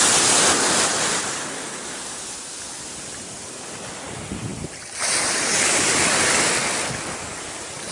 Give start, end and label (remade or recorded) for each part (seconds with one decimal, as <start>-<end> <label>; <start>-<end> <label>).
0.0-7.9 recorded